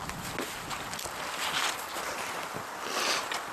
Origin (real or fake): real